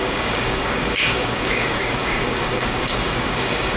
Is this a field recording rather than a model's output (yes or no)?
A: no